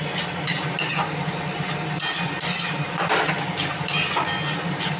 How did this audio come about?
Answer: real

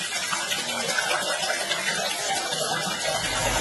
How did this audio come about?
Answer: real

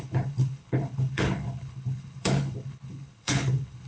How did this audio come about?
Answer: fake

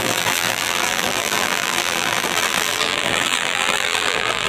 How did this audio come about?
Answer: fake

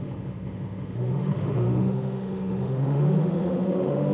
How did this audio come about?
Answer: fake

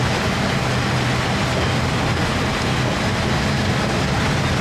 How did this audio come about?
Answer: real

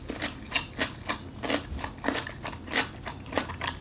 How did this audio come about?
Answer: real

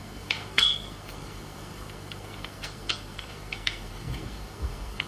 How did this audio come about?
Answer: fake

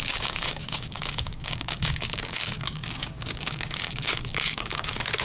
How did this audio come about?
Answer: fake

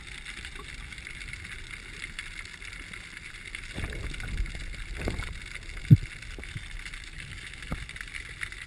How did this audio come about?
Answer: real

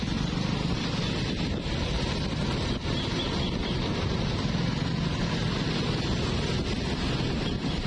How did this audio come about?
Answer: real